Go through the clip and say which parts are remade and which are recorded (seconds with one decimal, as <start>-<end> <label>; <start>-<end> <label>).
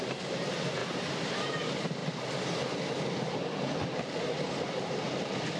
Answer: 0.0-0.8 recorded; 0.8-1.5 remade; 1.5-2.0 recorded; 2.0-5.6 remade